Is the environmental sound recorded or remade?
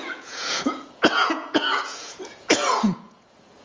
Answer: remade